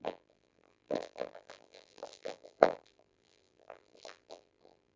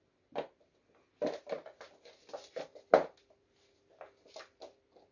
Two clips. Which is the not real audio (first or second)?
first